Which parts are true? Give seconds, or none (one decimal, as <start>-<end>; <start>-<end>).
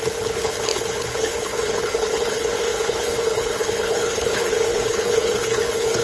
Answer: none